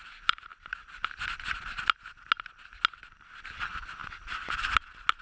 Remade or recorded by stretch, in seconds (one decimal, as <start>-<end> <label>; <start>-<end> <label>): 0.0-5.2 recorded